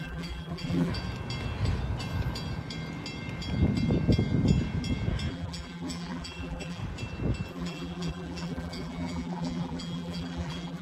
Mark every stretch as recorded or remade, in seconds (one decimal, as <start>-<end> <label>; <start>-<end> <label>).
0.0-0.9 remade; 0.9-5.3 recorded; 5.3-6.8 remade; 6.8-7.5 recorded; 7.5-10.8 remade